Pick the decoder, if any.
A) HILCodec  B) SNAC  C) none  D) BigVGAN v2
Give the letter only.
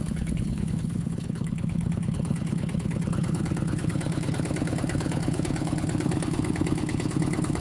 A